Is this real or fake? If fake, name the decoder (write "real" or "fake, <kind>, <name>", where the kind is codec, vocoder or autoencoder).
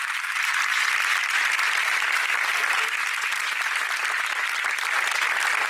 fake, vocoder, BigVGAN v2